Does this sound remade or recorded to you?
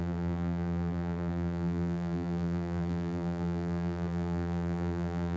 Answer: remade